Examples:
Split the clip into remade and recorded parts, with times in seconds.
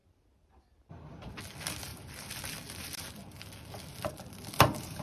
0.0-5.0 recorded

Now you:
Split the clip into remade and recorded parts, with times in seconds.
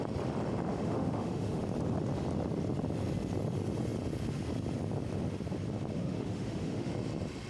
0.0-0.7 recorded; 0.7-1.6 remade; 1.6-6.0 recorded; 6.0-6.9 remade; 6.9-7.5 recorded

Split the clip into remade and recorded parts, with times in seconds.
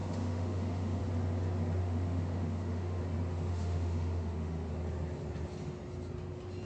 0.0-1.0 remade; 1.0-1.8 recorded; 1.8-3.0 remade; 3.0-3.5 recorded; 3.5-4.7 remade; 4.7-6.7 recorded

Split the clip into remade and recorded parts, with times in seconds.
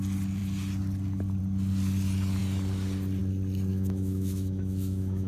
0.0-3.7 recorded; 3.7-5.3 remade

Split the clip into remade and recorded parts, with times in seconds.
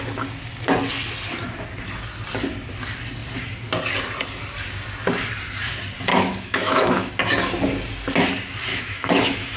0.0-6.1 recorded; 6.1-7.1 remade; 7.1-8.7 recorded; 8.7-9.6 remade